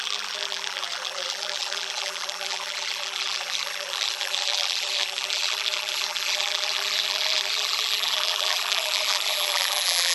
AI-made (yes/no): yes